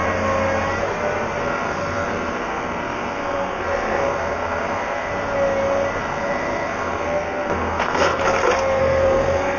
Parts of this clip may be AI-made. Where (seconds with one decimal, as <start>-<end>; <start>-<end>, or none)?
1.4-5.1; 6.0-8.2; 8.8-9.6